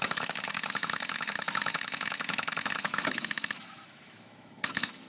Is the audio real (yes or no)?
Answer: no